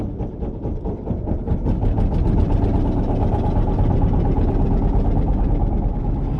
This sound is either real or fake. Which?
real